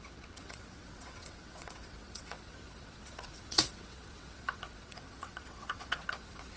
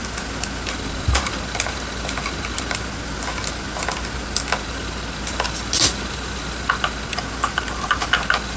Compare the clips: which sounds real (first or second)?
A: second